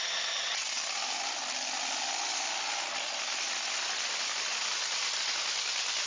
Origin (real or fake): real